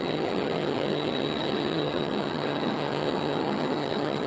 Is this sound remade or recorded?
remade